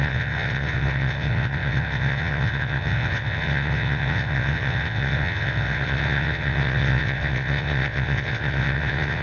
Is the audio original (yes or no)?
no